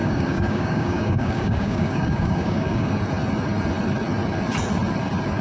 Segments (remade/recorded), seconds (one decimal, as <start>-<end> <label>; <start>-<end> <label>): 0.0-2.9 remade; 2.9-5.4 recorded

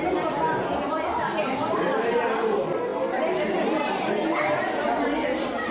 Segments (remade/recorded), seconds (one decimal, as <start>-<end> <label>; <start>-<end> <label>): 0.0-5.7 recorded

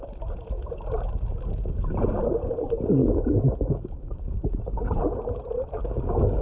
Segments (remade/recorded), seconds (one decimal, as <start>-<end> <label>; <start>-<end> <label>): 0.0-3.0 recorded; 3.0-4.9 remade; 4.9-5.8 recorded; 5.8-6.4 remade

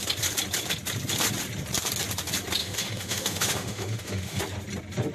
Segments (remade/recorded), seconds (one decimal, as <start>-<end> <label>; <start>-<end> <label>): 0.0-2.6 recorded; 2.6-4.4 remade; 4.4-5.1 recorded

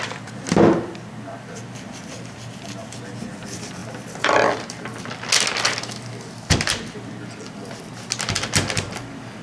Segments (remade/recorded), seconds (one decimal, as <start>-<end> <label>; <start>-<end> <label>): 0.0-9.4 recorded

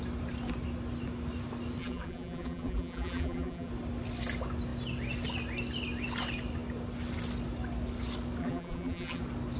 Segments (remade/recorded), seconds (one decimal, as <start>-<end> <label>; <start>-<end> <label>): 0.0-1.8 recorded; 1.8-3.7 remade; 3.7-8.4 recorded; 8.4-9.2 remade; 9.2-9.6 recorded

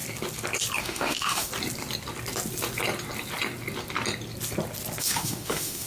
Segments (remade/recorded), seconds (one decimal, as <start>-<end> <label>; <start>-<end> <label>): 0.0-0.8 recorded; 0.8-1.5 remade; 1.5-5.0 recorded; 5.0-5.9 remade